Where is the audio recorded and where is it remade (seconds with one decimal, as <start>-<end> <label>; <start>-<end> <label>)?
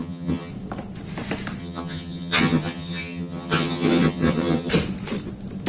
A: 0.0-0.5 remade; 0.5-1.6 recorded; 1.6-4.7 remade; 4.7-5.7 recorded